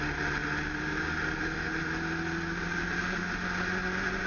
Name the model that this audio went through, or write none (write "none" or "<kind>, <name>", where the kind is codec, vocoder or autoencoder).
none